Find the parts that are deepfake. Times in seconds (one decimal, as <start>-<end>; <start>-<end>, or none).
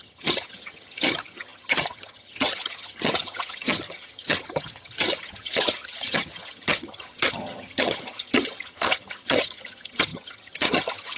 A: 0.0-11.2